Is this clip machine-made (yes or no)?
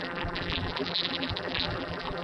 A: yes